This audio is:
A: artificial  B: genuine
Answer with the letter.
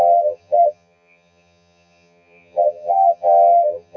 A